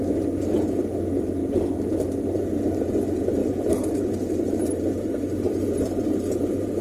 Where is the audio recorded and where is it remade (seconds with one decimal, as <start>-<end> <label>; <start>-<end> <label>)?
0.0-3.4 recorded; 3.4-6.8 remade